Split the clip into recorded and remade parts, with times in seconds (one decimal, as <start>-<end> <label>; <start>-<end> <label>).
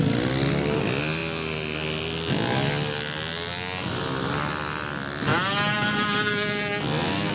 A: 0.0-7.3 recorded